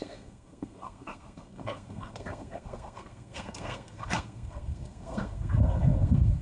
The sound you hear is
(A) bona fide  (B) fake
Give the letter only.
B